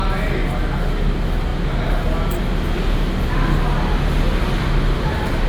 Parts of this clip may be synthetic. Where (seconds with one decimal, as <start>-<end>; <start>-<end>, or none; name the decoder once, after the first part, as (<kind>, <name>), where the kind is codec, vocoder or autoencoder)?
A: none